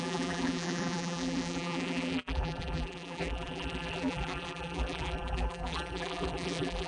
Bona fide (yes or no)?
no